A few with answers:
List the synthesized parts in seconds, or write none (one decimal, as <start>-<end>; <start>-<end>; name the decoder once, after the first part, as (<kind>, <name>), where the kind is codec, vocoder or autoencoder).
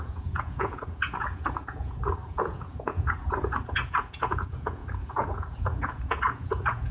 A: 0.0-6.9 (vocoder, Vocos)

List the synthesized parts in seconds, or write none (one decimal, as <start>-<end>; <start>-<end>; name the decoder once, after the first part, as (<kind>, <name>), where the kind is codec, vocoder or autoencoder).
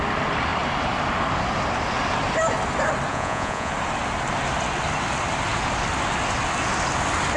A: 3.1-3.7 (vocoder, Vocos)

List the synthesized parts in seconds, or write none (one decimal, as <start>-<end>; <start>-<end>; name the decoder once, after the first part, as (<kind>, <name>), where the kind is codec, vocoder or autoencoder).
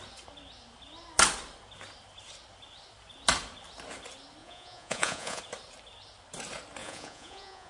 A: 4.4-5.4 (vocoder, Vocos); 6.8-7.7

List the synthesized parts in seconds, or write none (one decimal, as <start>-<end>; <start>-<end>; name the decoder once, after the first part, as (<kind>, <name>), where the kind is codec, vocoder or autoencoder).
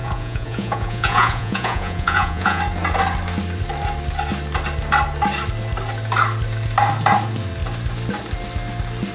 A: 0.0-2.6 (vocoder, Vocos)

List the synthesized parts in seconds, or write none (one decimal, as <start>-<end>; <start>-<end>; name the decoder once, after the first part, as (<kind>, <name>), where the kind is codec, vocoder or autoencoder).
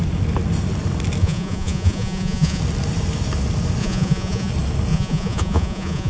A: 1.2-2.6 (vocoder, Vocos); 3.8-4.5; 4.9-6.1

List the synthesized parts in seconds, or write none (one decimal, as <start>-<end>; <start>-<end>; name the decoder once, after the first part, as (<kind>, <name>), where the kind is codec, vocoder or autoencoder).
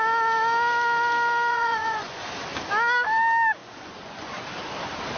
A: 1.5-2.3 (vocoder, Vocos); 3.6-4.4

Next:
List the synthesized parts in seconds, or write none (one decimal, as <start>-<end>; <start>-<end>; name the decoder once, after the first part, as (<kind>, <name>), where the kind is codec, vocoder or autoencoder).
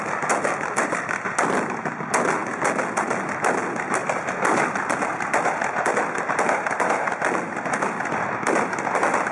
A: none